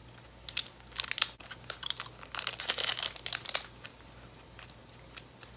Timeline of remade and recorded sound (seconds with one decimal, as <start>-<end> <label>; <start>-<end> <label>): 0.0-5.6 recorded